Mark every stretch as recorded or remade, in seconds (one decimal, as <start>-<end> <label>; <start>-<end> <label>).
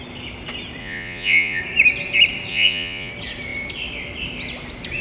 0.0-0.8 recorded; 0.8-1.6 remade; 1.6-2.5 recorded; 2.5-3.1 remade; 3.1-5.0 recorded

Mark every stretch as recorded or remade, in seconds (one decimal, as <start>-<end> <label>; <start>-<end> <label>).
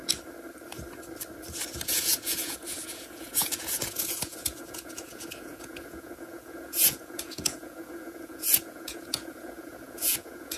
0.0-1.7 recorded; 1.7-10.6 remade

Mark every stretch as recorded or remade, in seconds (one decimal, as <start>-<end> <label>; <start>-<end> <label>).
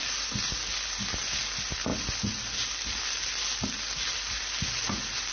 0.0-5.3 recorded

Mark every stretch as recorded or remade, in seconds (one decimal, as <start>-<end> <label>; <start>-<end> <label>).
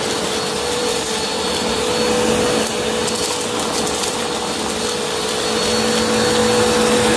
0.0-7.2 recorded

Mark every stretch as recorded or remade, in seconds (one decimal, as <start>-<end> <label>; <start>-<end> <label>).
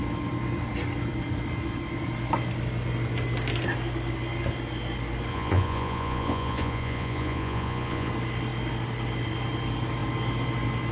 0.0-5.3 recorded; 5.3-8.1 remade; 8.1-10.9 recorded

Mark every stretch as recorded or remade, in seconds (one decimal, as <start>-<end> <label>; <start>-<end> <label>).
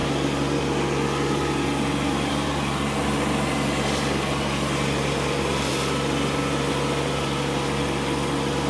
0.0-8.7 recorded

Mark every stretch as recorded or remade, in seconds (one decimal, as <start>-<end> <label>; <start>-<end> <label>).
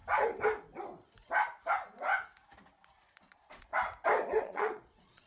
0.0-3.1 recorded; 3.1-3.7 remade; 3.7-4.4 recorded; 4.4-5.3 remade